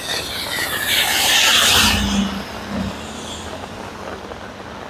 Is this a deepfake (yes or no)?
no